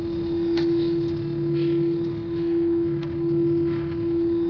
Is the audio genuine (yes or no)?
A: no